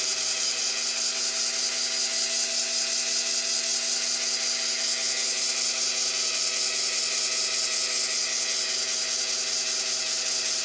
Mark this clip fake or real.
real